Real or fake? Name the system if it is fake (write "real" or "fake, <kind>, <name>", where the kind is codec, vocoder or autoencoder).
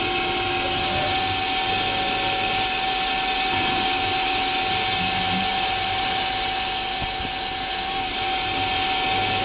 real